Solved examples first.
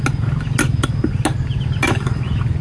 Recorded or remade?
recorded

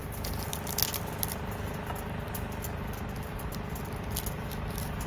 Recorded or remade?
recorded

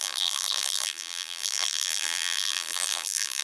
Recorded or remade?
remade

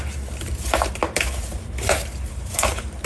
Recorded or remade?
remade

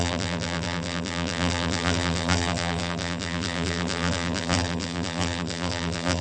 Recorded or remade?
remade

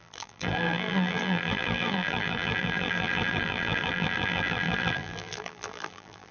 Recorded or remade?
remade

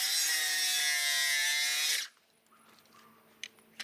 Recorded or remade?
recorded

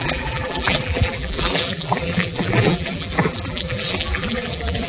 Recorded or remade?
remade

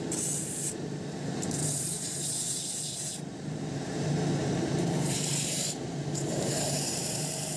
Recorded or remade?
remade